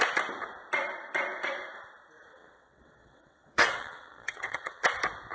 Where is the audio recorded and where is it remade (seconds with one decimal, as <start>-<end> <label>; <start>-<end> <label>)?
0.0-2.3 recorded; 2.3-4.8 remade; 4.8-5.3 recorded